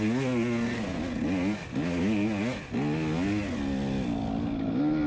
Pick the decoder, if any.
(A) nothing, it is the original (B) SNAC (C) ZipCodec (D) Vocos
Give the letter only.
A